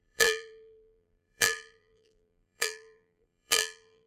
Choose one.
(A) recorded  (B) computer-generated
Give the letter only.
B